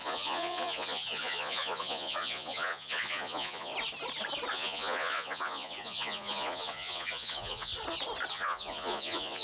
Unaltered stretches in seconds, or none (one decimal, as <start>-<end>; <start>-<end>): 3.7-4.5; 7.7-8.3